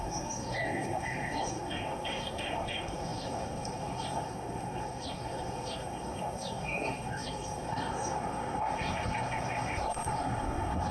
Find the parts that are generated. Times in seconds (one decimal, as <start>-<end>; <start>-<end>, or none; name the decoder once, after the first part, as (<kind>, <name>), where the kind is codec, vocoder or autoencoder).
0.0-10.9 (codec, SNAC)